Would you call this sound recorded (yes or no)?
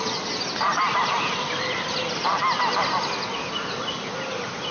yes